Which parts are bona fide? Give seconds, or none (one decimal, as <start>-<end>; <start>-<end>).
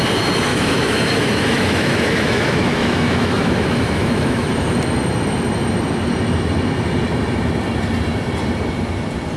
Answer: 0.0-0.5; 4.5-9.4